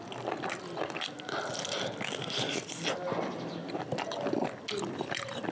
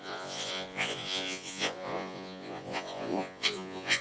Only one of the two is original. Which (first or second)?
first